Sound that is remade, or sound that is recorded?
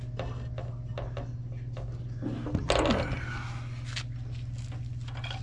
recorded